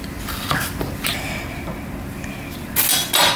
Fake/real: real